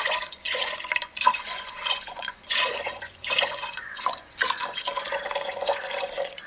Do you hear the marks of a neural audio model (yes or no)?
yes